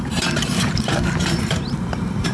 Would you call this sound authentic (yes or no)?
no